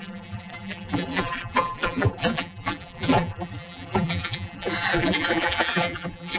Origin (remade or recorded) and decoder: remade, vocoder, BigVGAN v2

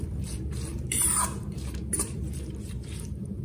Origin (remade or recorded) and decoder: remade, vocoder, BigVGAN v2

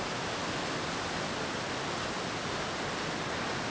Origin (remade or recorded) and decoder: recorded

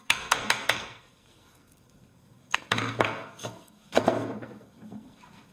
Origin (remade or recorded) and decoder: remade, codec, SNAC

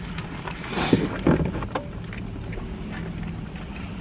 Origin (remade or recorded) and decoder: recorded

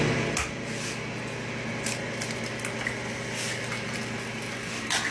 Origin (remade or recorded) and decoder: recorded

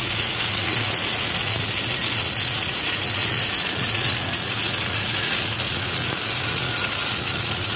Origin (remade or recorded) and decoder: remade, vocoder, Vocos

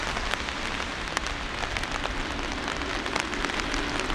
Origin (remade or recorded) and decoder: recorded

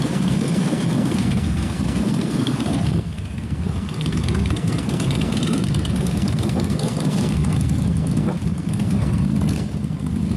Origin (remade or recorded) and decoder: remade, codec, SNAC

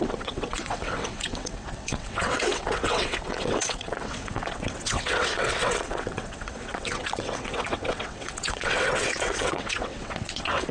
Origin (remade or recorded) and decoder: remade, vocoder, WaveNeXt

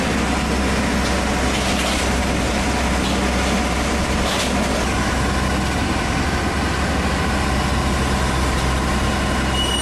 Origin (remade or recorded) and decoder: recorded